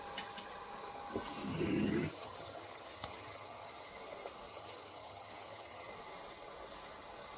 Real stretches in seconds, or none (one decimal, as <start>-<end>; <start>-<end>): 0.0-1.5; 3.9-4.5; 5.9-7.4